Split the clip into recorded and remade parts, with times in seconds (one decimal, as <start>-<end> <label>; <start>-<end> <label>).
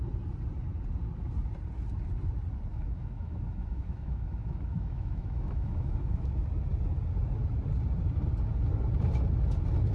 0.0-2.7 recorded; 2.7-6.3 remade; 6.3-9.9 recorded